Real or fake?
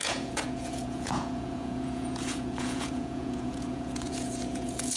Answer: fake